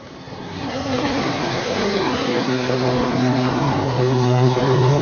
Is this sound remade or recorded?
remade